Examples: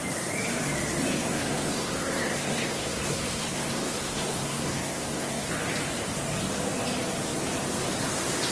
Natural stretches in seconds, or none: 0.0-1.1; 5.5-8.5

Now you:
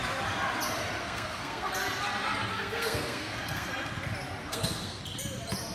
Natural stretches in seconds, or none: 0.0-1.0; 1.7-2.5; 3.7-4.4; 5.0-5.7

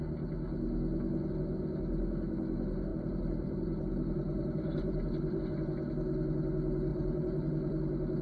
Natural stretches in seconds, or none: 0.0-2.9; 5.4-6.9